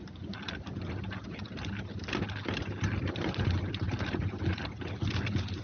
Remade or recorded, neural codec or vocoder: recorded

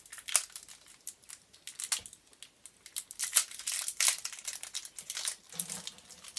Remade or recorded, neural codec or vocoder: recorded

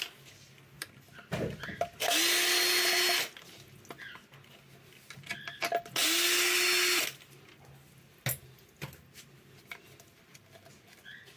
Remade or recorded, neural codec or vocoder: recorded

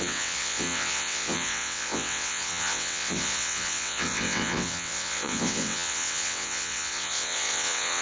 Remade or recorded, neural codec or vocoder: remade, vocoder, WaveNeXt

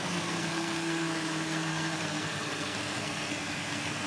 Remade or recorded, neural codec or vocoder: remade, codec, SNAC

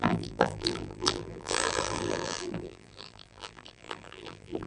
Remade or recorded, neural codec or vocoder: remade, vocoder, BigVGAN v2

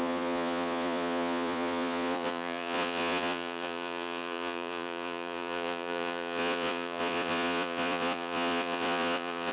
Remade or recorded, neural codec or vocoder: remade, vocoder, Vocos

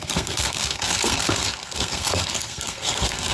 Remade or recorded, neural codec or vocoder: remade, codec, SNAC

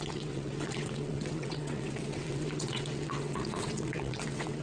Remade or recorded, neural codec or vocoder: remade, vocoder, WaveNeXt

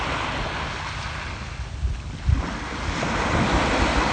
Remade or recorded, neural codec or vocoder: recorded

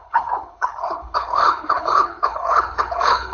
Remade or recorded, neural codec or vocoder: remade, codec, HILCodec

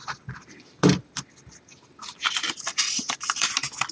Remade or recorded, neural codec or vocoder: recorded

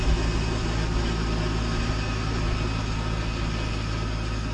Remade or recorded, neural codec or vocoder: recorded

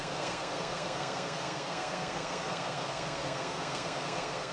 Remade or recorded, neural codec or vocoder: remade, codec, SNAC